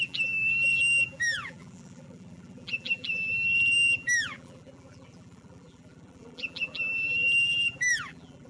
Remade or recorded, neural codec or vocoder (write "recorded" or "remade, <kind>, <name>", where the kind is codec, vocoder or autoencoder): remade, vocoder, BigVGAN v2